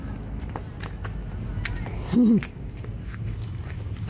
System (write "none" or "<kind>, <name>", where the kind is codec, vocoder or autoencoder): none